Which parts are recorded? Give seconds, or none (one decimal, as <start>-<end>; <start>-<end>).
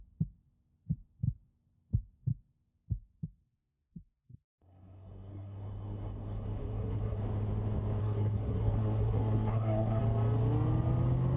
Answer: 0.0-3.4; 7.2-8.0; 10.0-11.4